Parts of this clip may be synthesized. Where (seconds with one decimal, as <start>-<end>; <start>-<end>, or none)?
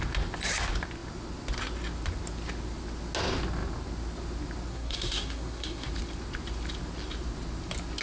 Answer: 4.7-5.9